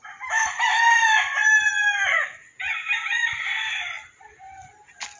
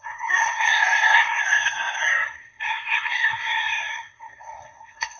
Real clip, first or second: first